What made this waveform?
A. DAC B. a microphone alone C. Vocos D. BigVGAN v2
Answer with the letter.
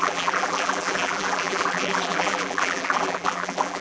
D